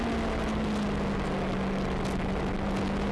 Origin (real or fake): real